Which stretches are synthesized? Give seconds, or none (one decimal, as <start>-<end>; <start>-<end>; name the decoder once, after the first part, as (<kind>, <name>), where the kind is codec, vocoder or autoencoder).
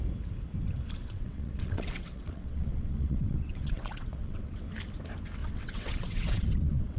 1.0-4.6 (vocoder, WaveNeXt); 5.4-7.0